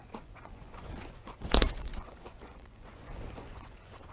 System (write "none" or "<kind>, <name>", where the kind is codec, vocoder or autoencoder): vocoder, Vocos